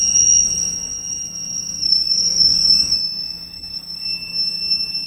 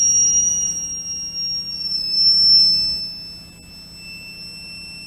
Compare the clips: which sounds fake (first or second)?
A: first